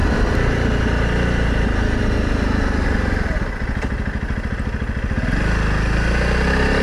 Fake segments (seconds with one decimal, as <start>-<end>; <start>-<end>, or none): none